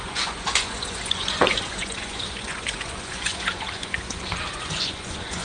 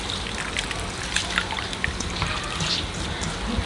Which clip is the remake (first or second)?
first